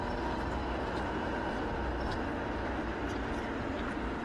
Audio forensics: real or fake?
real